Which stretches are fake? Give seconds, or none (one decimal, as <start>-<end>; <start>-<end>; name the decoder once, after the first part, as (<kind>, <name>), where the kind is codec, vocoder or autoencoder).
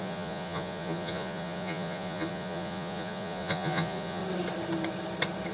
0.0-4.2 (vocoder, Vocos)